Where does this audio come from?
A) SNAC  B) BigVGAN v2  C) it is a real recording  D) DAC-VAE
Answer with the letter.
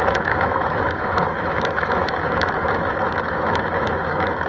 D